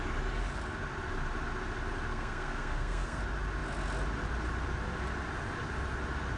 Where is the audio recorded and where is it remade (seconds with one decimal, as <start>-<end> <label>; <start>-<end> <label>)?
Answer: 0.0-2.1 recorded; 2.1-3.2 remade; 3.2-6.4 recorded